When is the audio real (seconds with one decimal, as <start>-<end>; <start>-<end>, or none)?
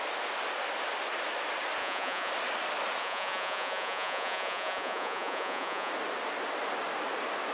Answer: 0.0-1.8; 2.3-3.0; 5.9-7.5